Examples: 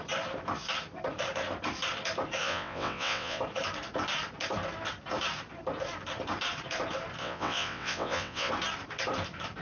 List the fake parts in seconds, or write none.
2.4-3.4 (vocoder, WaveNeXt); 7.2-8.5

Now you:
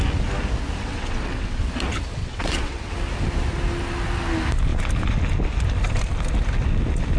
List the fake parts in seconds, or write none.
0.8-1.6 (vocoder, WaveNeXt); 2.2-2.9

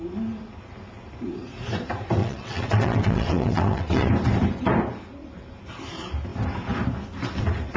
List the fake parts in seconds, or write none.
2.2-4.1 (vocoder, WaveNeXt)

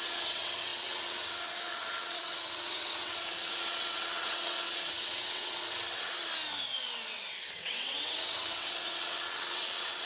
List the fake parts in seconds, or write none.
0.0-6.2 (vocoder, WaveNeXt); 7.5-10.1

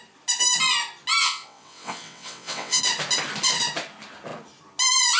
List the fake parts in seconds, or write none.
1.2-2.8 (vocoder, WaveNeXt)

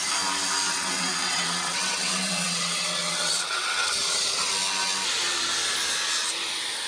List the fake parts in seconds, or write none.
0.7-4.5 (vocoder, WaveNeXt)